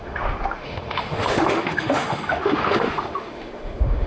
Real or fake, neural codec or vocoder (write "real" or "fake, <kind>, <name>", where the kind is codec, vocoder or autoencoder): fake, autoencoder, DAC-VAE